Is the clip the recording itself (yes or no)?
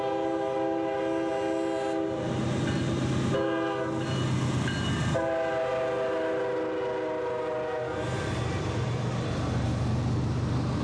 yes